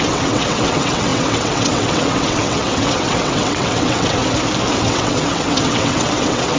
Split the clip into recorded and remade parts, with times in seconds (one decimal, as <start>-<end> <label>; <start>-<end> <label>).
0.0-4.2 remade; 4.2-4.8 recorded; 4.8-6.6 remade